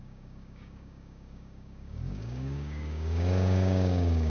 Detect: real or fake fake